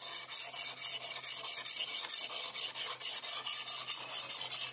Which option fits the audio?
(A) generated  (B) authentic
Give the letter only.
B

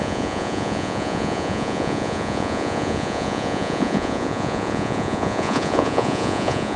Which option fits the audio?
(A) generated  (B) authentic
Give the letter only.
A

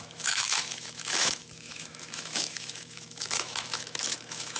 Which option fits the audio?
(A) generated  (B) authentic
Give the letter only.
A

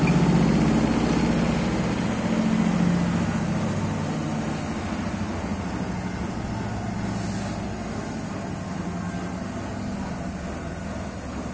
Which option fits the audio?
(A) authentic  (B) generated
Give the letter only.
A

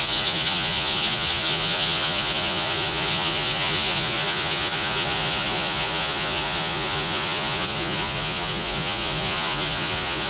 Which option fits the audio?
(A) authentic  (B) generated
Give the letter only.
B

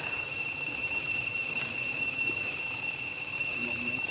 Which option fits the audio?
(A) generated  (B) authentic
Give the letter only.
A